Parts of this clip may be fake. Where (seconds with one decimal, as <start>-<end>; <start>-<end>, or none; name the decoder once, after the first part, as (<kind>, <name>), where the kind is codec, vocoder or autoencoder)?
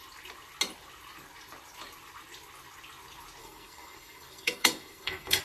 3.4-5.4 (codec, SNAC)